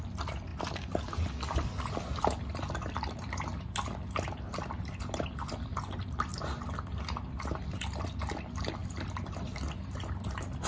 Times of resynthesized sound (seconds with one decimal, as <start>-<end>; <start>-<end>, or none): none